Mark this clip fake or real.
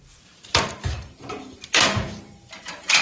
fake